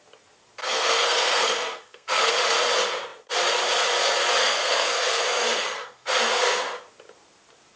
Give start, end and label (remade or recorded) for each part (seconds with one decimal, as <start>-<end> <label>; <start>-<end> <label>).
0.0-0.6 recorded; 0.6-2.3 remade; 2.3-4.4 recorded; 4.4-6.6 remade; 6.6-7.8 recorded